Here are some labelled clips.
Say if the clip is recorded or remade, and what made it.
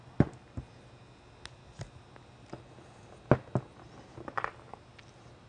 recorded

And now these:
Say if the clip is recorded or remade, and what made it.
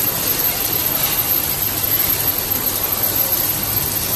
recorded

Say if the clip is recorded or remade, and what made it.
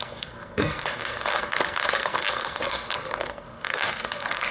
remade, codec, SNAC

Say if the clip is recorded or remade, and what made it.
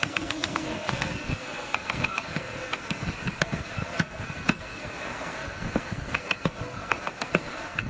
remade, codec, SNAC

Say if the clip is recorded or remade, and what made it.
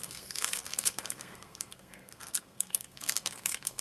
remade, codec, SNAC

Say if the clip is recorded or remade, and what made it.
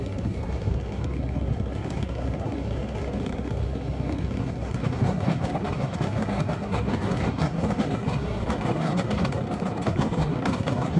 remade, codec, SNAC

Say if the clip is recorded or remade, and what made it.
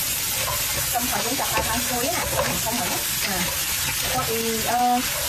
recorded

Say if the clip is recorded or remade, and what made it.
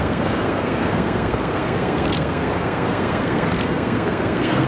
remade, codec, SNAC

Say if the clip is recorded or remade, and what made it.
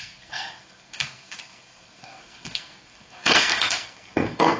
remade, codec, SNAC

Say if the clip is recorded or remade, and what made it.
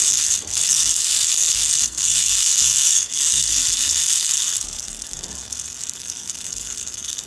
remade, codec, SNAC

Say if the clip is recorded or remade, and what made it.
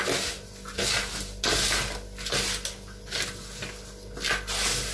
recorded